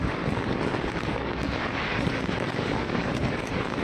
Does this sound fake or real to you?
fake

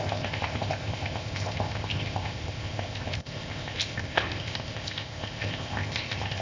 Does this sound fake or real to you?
fake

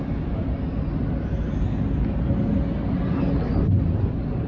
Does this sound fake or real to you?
real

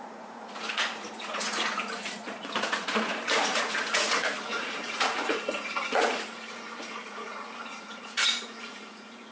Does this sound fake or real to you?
fake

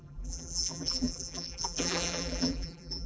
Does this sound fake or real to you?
fake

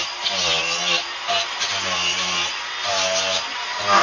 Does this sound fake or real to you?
real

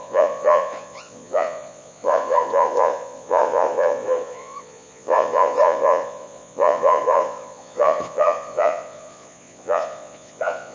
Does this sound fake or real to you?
fake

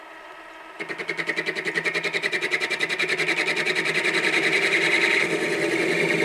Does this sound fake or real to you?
real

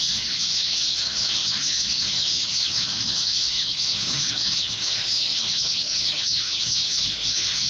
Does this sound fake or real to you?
fake